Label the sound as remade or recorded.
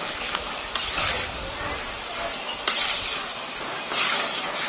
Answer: recorded